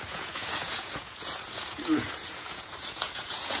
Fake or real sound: fake